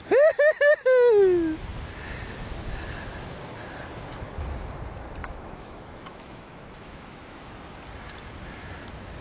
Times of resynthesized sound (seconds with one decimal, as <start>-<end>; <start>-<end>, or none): 5.2-7.5